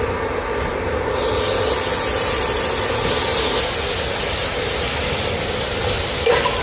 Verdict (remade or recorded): recorded